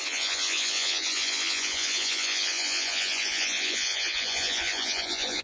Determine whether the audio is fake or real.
fake